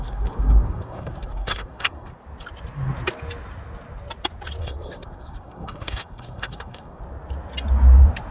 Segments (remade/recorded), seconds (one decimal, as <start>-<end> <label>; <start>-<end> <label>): 0.0-2.1 remade; 2.1-4.6 recorded; 4.6-7.0 remade; 7.0-8.3 recorded